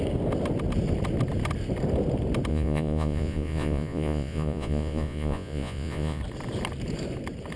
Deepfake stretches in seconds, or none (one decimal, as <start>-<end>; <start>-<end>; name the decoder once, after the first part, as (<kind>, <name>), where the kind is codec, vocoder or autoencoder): 2.5-6.2 (vocoder, Vocos)